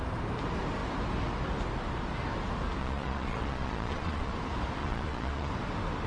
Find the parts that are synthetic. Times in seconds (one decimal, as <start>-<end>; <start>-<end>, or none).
2.8-4.3; 4.8-5.5